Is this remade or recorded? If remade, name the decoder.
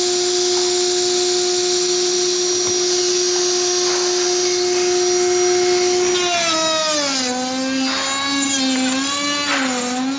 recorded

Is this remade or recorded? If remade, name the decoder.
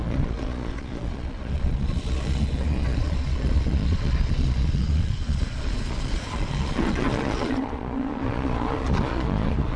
remade, vocoder, Vocos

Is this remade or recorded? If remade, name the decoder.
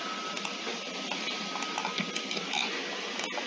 recorded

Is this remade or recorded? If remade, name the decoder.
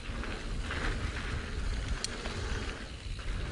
recorded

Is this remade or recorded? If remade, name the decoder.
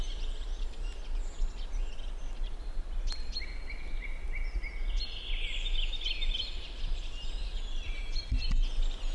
recorded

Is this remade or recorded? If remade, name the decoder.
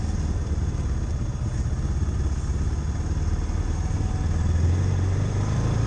recorded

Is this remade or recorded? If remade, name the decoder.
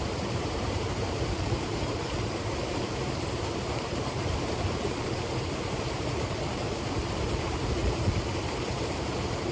remade, vocoder, BigVGAN v2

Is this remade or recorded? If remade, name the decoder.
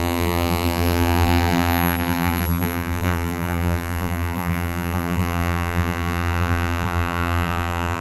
remade, vocoder, BigVGAN v2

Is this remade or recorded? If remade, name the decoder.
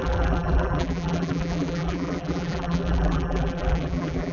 remade, vocoder, BigVGAN v2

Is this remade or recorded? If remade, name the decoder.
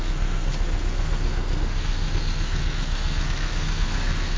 remade, codec, SNAC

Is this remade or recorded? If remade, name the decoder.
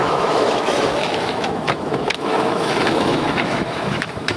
remade, autoencoder, DAC-VAE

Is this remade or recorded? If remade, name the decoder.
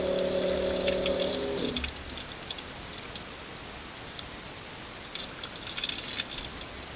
recorded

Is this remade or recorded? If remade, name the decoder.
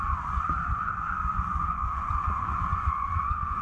remade, vocoder, Vocos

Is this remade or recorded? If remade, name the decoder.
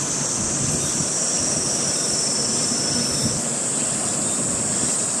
recorded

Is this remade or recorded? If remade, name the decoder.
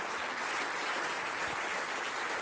recorded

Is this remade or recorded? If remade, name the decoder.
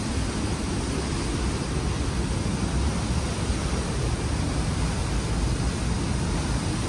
recorded